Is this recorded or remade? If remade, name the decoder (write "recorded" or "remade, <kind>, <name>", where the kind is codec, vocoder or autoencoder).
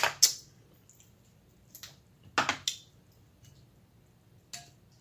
recorded